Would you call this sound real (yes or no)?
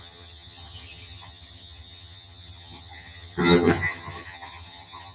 no